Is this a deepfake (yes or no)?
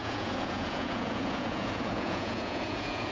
yes